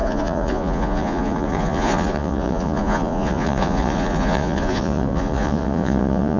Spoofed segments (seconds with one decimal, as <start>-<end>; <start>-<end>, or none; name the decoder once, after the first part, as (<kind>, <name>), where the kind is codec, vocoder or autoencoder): 0.0-6.4 (vocoder, Vocos)